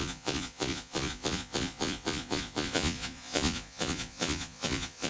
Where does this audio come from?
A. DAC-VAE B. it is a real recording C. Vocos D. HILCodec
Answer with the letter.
C